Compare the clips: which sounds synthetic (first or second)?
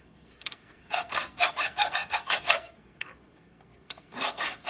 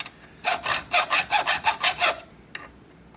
first